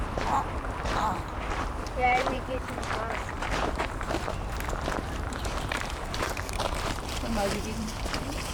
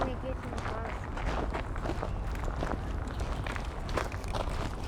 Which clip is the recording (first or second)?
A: second